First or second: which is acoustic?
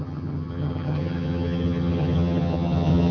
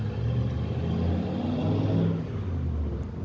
second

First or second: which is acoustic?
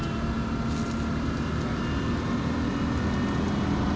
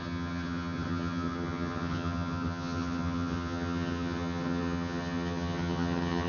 first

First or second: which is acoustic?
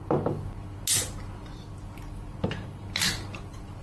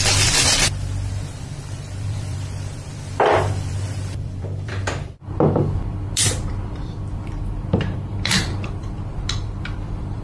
first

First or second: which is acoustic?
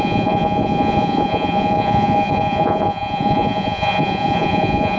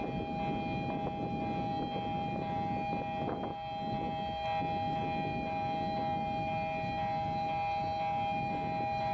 second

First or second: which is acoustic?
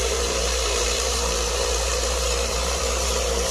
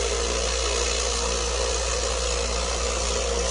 second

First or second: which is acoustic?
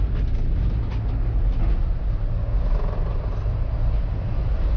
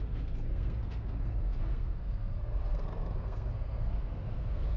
first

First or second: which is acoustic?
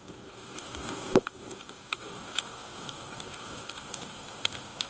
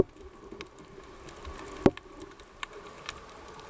second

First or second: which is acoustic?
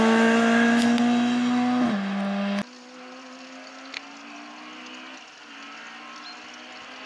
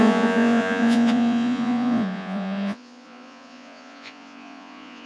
first